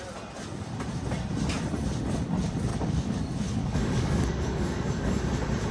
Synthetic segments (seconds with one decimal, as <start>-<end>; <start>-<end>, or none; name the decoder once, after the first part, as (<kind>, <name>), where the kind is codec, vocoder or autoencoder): 2.7-3.2 (codec, DAC); 3.6-5.2